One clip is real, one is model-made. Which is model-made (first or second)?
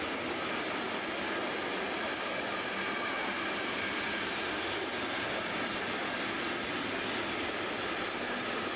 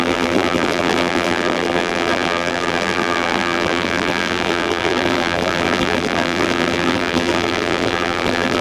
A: second